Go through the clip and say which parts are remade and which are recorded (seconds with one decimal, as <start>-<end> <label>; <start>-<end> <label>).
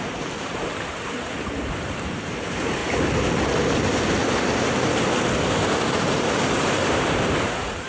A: 0.0-2.8 remade; 2.8-5.9 recorded; 5.9-7.9 remade